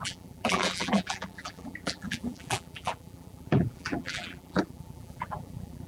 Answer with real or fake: fake